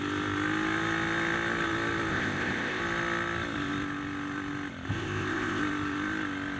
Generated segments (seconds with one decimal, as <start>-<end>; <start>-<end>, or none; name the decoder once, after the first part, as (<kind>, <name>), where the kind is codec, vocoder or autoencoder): 2.1-2.8 (codec, ZipCodec); 4.9-5.6